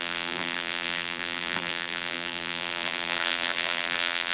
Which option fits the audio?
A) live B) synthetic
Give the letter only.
B